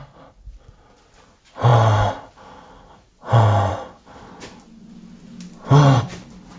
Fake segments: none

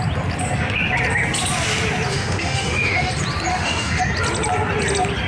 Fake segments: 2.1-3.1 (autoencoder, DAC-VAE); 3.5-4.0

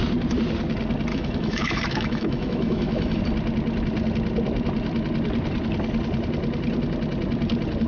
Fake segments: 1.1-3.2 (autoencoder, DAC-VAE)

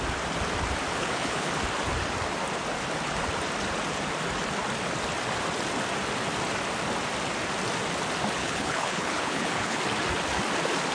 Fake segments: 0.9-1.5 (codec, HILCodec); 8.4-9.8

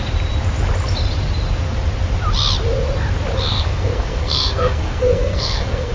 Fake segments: 3.5-5.9 (codec, SNAC)

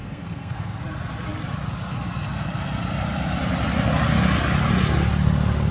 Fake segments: 0.0-0.8 (codec, SNAC)